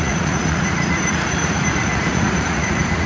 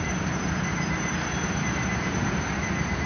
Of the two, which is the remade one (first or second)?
first